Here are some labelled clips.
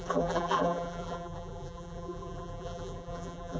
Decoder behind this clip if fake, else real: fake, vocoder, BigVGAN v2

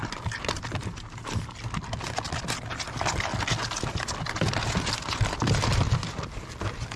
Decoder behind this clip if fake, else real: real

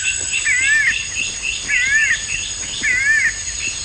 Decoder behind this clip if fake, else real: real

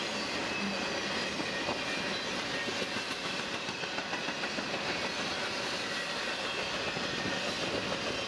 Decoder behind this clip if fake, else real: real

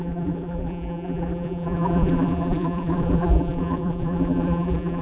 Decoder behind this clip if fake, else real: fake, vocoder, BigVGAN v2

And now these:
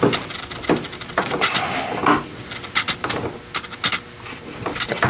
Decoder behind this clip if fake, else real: real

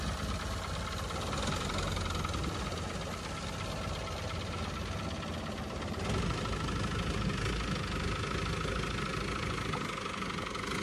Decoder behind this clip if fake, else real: real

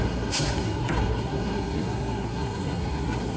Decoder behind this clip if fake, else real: fake, codec, SNAC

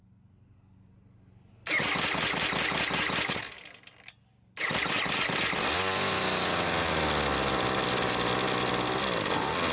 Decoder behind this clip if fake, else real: real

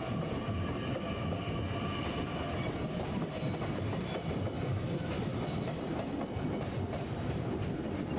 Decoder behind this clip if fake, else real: real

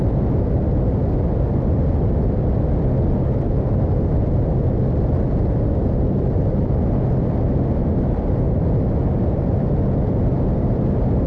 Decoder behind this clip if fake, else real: real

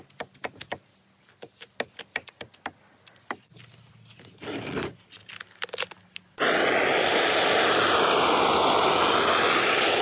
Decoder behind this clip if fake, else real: real